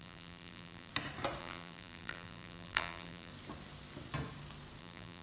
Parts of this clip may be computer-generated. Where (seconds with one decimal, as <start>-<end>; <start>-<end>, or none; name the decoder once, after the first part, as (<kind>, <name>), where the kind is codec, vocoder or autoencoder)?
0.0-0.9 (vocoder, BigVGAN v2); 1.4-3.3; 4.8-5.2